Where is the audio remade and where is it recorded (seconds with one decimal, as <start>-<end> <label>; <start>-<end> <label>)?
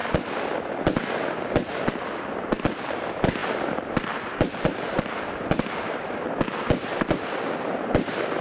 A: 0.0-1.7 recorded; 1.7-8.4 remade